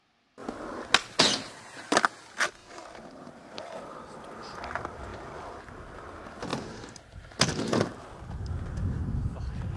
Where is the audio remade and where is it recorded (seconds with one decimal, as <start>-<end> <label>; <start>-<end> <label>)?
0.0-2.6 recorded; 2.6-3.4 remade; 3.4-5.1 recorded; 5.1-5.6 remade; 5.6-9.8 recorded